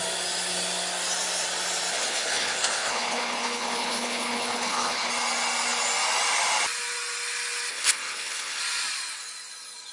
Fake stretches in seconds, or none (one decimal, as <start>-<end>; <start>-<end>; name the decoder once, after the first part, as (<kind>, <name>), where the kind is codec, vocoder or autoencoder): 1.9-5.1 (codec, HILCodec); 7.7-8.6